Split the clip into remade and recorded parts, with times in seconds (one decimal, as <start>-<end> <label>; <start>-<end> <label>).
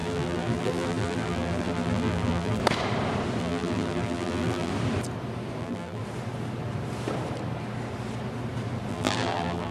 0.0-2.6 remade; 2.6-3.4 recorded; 3.4-4.7 remade; 4.7-5.6 recorded; 5.6-6.0 remade; 6.0-8.9 recorded; 8.9-9.7 remade